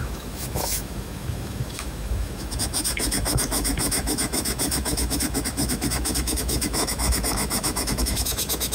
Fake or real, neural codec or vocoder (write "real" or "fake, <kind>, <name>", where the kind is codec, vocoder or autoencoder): fake, autoencoder, DAC-VAE